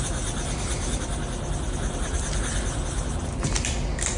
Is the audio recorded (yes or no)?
yes